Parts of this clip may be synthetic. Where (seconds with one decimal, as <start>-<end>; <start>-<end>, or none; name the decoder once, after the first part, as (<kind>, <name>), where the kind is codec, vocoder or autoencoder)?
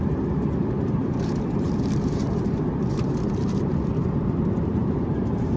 0.0-5.6 (vocoder, BigVGAN v2)